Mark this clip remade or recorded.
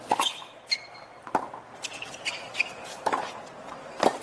recorded